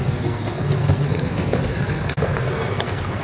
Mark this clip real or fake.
fake